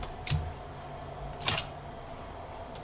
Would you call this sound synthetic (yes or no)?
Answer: no